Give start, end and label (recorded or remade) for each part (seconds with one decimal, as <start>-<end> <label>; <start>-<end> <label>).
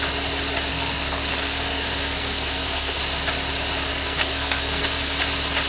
0.0-0.7 recorded; 0.7-3.0 remade; 3.0-3.9 recorded; 3.9-5.2 remade; 5.2-5.7 recorded